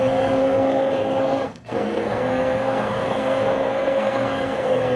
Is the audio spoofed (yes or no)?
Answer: yes